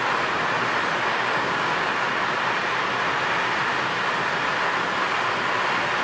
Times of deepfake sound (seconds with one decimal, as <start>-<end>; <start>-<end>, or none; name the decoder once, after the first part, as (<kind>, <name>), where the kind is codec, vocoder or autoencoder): 1.1-1.9 (codec, DAC)